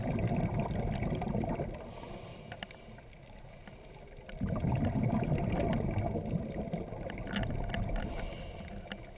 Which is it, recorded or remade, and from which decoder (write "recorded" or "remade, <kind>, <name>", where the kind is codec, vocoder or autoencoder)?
recorded